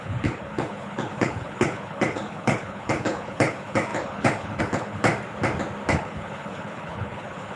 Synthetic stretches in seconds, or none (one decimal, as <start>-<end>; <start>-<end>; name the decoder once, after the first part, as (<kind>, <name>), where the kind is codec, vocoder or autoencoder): 0.0-5.1 (codec, HILCodec); 5.9-7.6